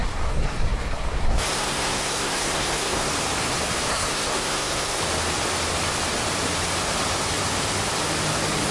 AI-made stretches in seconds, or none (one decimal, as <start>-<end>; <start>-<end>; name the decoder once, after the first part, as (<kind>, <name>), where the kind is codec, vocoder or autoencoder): 0.0-3.1 (codec, SNAC); 3.9-5.0